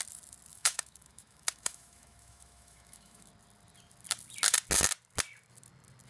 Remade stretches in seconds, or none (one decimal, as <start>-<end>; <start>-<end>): 0.5-3.3